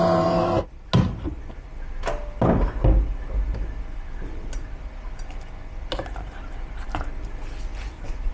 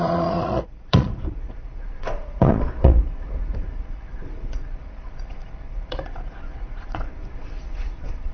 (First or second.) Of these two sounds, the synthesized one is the second